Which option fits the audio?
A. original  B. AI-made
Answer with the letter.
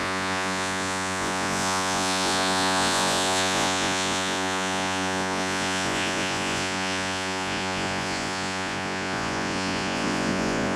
B